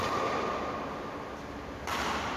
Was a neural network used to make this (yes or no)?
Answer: no